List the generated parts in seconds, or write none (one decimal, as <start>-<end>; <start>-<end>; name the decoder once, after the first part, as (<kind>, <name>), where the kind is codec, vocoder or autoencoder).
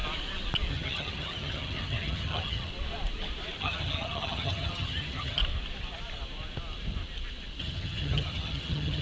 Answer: 0.7-2.7 (vocoder, HiFi-GAN); 3.6-5.4; 7.6-9.0